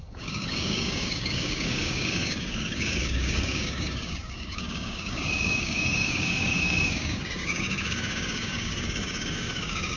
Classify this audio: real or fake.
fake